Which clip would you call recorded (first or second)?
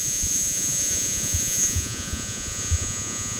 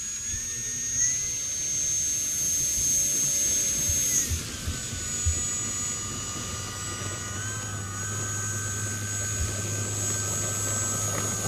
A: second